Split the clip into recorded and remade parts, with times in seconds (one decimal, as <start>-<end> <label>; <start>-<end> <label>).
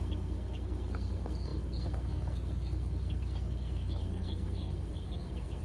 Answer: 0.0-5.6 remade